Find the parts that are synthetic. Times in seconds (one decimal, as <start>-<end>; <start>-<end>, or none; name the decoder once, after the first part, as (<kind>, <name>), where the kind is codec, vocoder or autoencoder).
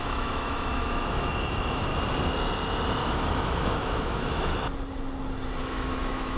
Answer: 0.0-1.9 (autoencoder, DAC-VAE); 3.1-4.5; 5.6-6.4